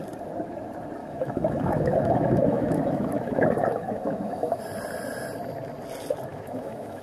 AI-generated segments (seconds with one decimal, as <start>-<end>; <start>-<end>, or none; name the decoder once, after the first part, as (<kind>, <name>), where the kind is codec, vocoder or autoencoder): 1.0-4.6 (autoencoder, DAC-VAE); 6.3-7.0